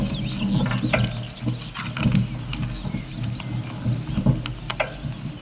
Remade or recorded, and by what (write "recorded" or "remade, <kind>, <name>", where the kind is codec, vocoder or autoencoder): recorded